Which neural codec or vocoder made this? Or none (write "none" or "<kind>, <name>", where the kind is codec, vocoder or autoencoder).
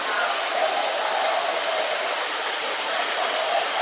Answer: none